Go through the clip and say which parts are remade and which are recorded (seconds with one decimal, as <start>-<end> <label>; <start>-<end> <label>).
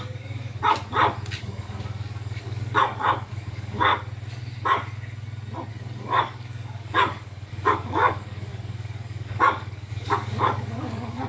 0.0-0.6 remade; 0.6-1.4 recorded; 1.4-3.9 remade; 3.9-5.7 recorded; 5.7-11.3 remade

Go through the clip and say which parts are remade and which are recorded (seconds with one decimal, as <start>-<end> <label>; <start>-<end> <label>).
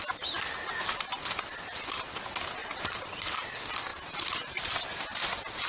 0.0-0.6 recorded; 0.6-1.1 remade; 1.1-2.6 recorded; 2.6-3.5 remade; 3.5-3.9 recorded; 3.9-5.7 remade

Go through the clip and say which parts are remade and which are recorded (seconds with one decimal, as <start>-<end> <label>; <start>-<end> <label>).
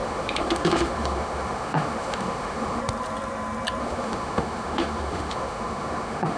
0.0-2.8 remade; 2.8-3.8 recorded; 3.8-6.4 remade